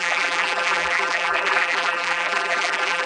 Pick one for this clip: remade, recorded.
remade